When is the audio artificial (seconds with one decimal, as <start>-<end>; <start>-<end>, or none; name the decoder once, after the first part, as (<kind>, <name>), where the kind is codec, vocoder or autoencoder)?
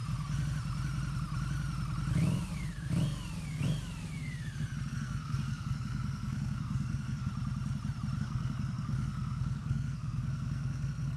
4.9-7.3 (codec, SNAC); 8.2-11.2